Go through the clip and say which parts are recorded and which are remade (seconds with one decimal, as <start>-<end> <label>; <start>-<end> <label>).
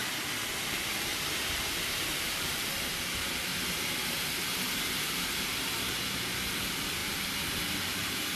0.0-0.6 recorded; 0.6-3.5 remade; 3.5-4.0 recorded; 4.0-8.4 remade